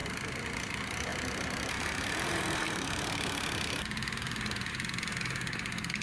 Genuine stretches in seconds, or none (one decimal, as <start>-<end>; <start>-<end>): 0.0-1.1; 4.7-6.0